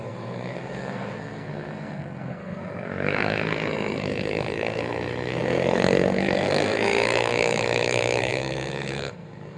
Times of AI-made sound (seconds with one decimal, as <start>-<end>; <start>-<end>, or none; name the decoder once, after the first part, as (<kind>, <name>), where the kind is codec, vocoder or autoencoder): 0.0-9.6 (codec, SNAC)